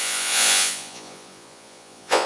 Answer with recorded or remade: remade